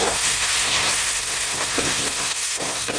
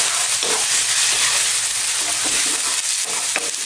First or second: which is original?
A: second